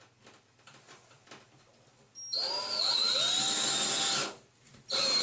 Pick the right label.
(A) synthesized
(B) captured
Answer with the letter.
B